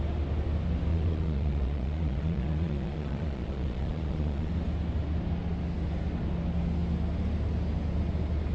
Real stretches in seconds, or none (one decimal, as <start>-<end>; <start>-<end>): 0.0-0.9; 4.5-8.5